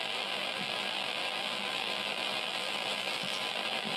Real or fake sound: fake